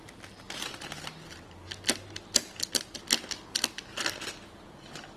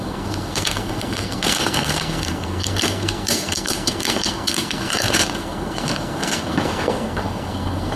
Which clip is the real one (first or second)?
first